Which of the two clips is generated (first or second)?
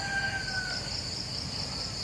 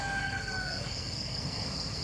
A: second